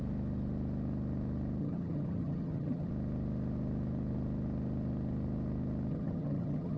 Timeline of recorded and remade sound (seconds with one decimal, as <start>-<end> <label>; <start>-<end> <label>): 0.0-1.6 recorded; 1.6-2.9 remade; 2.9-5.9 recorded; 5.9-6.8 remade